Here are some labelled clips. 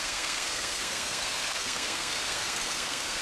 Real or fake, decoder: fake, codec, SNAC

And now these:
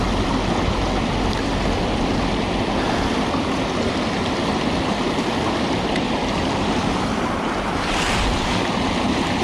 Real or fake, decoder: real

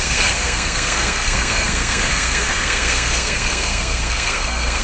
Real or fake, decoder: fake, codec, SNAC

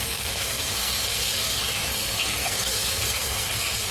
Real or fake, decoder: fake, codec, SNAC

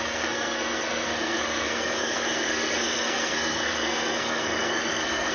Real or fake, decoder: fake, codec, SNAC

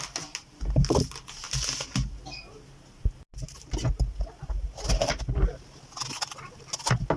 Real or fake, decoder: real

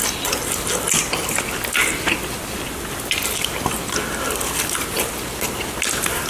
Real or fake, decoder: real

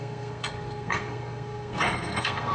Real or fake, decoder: fake, codec, SNAC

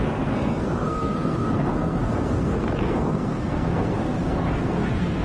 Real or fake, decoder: fake, codec, SNAC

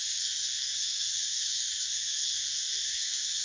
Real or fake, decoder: fake, codec, SNAC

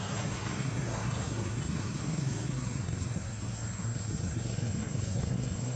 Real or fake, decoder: fake, codec, SNAC